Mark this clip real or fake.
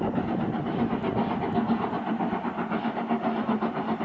real